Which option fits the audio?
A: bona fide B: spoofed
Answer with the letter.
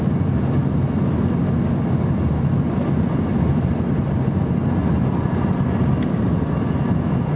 A